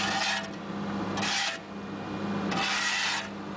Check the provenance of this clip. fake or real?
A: real